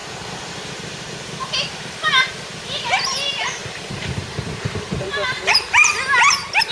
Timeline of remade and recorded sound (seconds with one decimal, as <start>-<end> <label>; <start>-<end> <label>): 0.0-1.2 remade; 1.2-3.6 recorded; 3.6-6.0 remade; 6.0-6.7 recorded